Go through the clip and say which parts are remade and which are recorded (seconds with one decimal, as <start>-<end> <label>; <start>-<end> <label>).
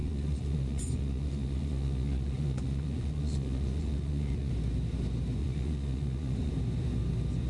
0.0-4.5 remade; 4.5-5.4 recorded; 5.4-6.5 remade; 6.5-7.5 recorded